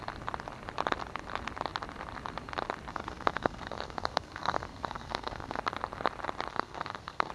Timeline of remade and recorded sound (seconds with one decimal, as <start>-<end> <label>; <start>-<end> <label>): 0.0-2.9 recorded; 2.9-5.6 remade; 5.6-6.5 recorded; 6.5-7.3 remade